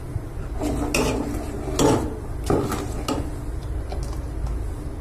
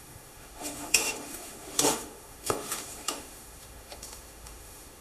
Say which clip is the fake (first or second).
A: second